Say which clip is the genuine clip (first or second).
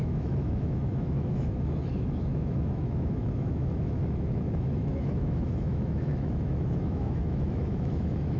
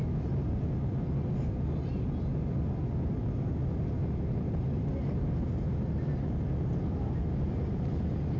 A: second